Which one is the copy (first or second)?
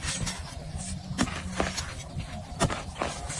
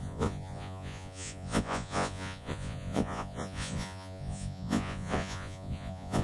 second